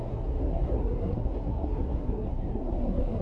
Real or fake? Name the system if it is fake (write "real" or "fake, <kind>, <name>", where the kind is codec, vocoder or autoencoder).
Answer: fake, codec, SNAC